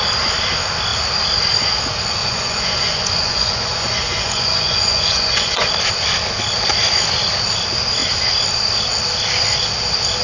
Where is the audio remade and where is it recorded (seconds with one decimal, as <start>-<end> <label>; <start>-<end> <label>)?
0.0-2.2 recorded; 2.2-5.7 remade; 5.7-10.2 recorded

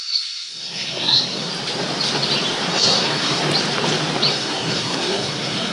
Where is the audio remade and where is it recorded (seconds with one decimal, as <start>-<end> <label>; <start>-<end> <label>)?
0.0-1.5 remade; 1.5-2.7 recorded; 2.7-3.4 remade; 3.4-4.3 recorded; 4.3-5.7 remade

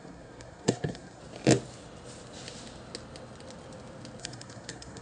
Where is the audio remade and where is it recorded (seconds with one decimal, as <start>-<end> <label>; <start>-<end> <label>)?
0.0-1.2 remade; 1.2-4.2 recorded; 4.2-5.0 remade

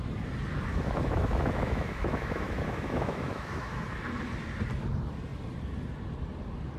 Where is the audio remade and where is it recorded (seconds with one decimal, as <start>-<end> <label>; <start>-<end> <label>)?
0.0-0.7 recorded; 0.7-3.9 remade; 3.9-6.8 recorded

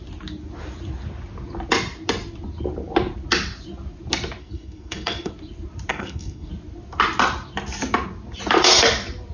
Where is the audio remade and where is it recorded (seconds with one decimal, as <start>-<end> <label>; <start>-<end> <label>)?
0.0-4.4 recorded; 4.4-5.3 remade; 5.3-5.9 recorded; 5.9-6.5 remade; 6.5-9.3 recorded

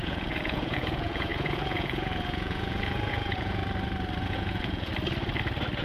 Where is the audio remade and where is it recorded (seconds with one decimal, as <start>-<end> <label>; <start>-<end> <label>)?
0.0-3.6 remade; 3.6-4.2 recorded; 4.2-4.9 remade; 4.9-5.8 recorded

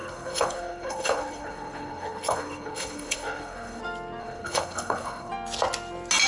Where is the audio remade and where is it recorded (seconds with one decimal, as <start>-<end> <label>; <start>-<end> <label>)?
0.0-3.8 remade; 3.8-4.2 recorded; 4.2-5.3 remade; 5.3-6.3 recorded

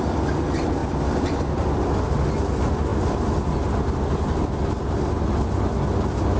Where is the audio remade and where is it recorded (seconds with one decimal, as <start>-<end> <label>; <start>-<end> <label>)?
0.0-6.4 recorded